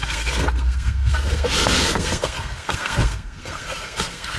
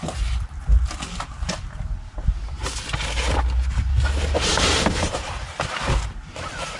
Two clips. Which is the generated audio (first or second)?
first